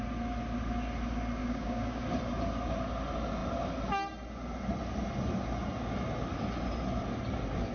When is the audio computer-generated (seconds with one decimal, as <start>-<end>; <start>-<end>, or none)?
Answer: 1.4-2.0